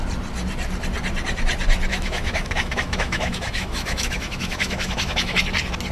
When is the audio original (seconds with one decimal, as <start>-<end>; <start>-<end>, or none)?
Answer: 0.0-1.9; 5.4-5.9